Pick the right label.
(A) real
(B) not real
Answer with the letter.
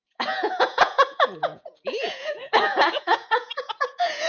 B